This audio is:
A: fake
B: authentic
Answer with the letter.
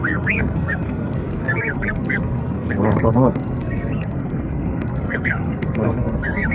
A